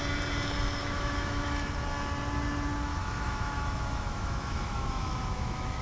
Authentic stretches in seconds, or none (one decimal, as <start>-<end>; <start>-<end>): 0.0-0.8; 1.7-2.9